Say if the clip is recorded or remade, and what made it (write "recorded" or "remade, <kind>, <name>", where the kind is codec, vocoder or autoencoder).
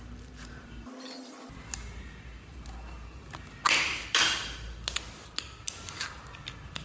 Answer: recorded